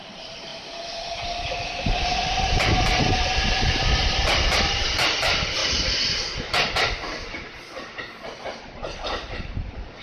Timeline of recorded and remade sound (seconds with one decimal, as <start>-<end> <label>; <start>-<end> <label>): 0.0-0.5 remade; 0.5-1.5 recorded; 1.5-5.6 remade; 5.6-8.6 recorded; 8.6-10.0 remade